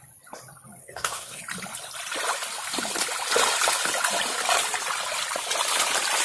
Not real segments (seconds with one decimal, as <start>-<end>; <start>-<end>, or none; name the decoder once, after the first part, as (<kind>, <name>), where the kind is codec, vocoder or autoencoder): 0.8-1.4 (codec, SNAC)